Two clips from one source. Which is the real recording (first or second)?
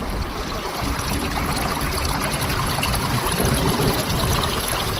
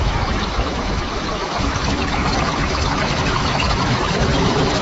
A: first